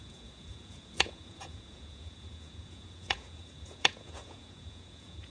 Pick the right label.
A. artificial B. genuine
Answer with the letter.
A